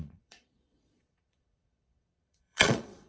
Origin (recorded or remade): remade